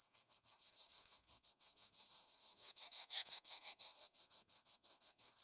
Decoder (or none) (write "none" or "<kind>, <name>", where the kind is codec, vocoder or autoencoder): codec, SNAC